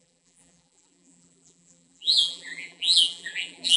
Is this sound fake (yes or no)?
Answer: yes